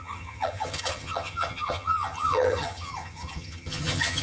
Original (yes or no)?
no